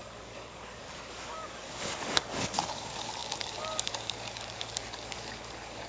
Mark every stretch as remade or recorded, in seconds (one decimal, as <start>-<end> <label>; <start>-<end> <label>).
0.0-5.9 remade